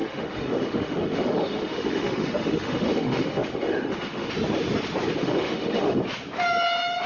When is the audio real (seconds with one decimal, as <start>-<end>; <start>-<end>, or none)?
4.3-5.2; 6.0-7.1